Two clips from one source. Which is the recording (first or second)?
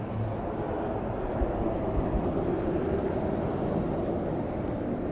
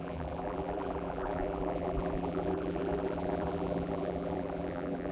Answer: first